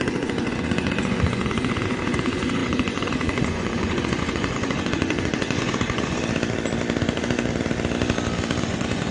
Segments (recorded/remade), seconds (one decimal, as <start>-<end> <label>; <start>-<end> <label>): 0.0-6.2 remade; 6.2-8.6 recorded; 8.6-9.1 remade